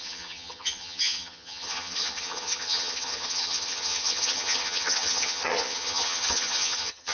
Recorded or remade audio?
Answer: remade